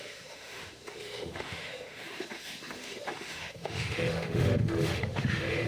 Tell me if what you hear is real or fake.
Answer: fake